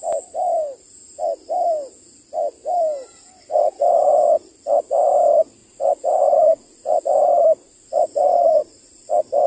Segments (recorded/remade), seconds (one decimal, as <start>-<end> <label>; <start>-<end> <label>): 0.0-5.6 recorded; 5.6-7.0 remade; 7.0-7.6 recorded; 7.6-9.1 remade; 9.1-9.5 recorded